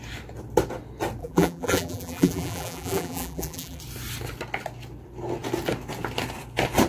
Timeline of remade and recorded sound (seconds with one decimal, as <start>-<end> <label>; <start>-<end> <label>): 0.0-1.2 recorded; 1.2-3.8 remade; 3.8-6.9 recorded